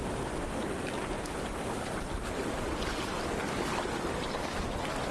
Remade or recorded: recorded